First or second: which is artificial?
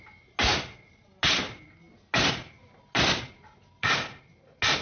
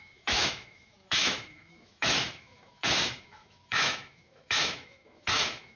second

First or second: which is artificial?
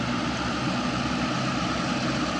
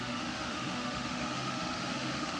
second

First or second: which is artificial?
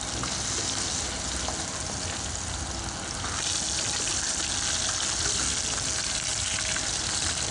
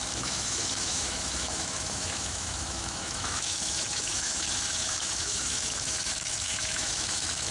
second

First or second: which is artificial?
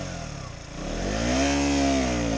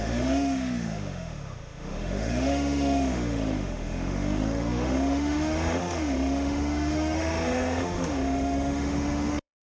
second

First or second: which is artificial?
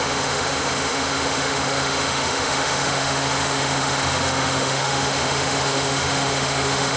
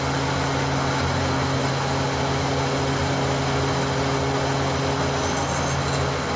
first